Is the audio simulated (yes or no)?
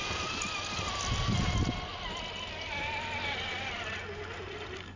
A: no